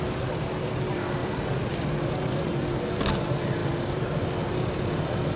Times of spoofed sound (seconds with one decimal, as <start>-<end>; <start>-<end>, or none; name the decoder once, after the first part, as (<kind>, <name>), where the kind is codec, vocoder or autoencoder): 1.2-1.7 (vocoder, BigVGAN v2); 3.6-4.4